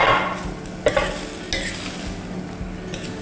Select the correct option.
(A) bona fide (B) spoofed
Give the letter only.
A